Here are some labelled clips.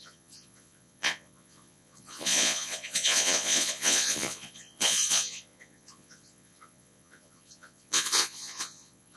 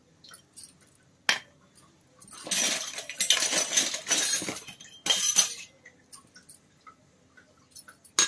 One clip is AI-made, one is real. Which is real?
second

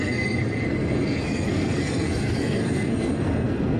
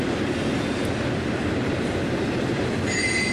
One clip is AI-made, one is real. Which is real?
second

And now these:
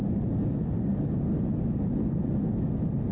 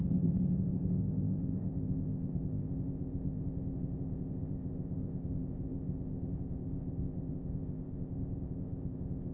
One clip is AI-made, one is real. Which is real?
first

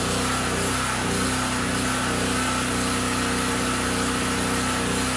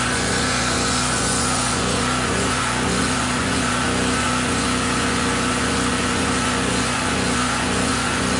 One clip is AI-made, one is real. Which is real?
first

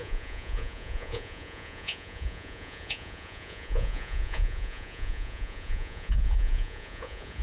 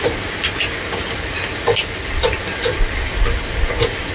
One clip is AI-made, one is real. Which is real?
second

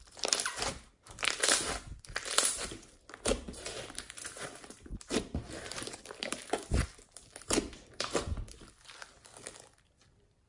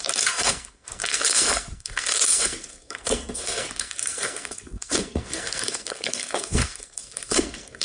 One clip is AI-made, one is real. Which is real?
first